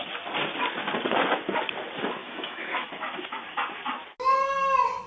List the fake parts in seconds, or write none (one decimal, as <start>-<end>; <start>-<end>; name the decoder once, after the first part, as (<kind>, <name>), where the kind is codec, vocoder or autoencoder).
2.2-2.9 (autoencoder, DAC-VAE)